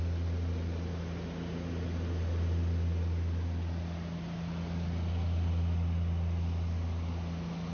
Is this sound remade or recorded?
recorded